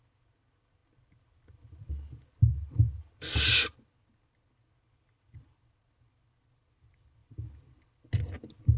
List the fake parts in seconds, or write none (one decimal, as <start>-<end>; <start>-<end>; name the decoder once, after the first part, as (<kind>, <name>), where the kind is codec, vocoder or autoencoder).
none